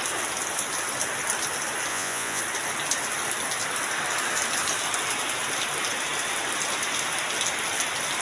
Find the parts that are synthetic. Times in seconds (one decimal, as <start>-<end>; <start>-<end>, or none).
1.9-2.4